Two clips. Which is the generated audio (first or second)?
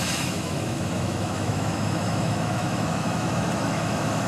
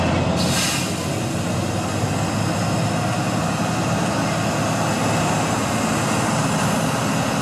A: first